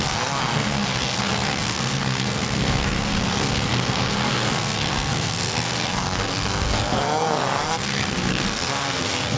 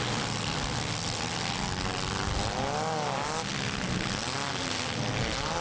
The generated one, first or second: first